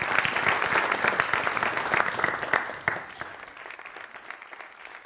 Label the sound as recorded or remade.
recorded